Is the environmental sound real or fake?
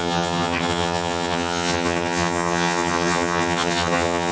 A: fake